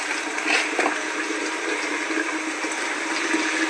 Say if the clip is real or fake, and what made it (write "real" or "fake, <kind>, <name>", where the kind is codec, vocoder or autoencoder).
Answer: real